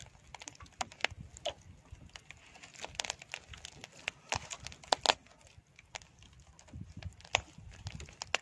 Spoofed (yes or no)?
no